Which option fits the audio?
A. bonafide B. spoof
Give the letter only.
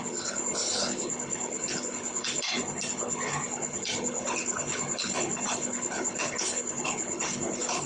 B